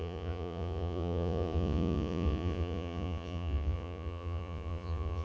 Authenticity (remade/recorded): remade